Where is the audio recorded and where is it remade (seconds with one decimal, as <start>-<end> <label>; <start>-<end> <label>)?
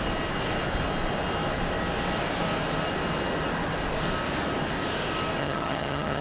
0.0-5.4 recorded; 5.4-6.2 remade